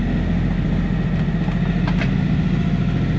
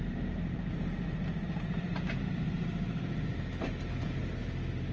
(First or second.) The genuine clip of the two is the first